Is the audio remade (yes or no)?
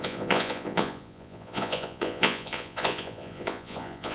yes